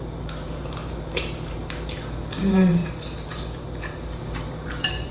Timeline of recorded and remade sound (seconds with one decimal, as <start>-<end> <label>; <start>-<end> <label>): 0.0-1.6 remade; 1.6-2.4 recorded; 2.4-5.1 remade